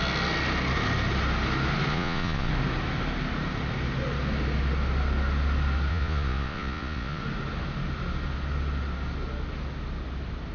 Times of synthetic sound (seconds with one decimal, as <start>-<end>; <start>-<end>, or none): 1.9-2.5; 5.9-7.2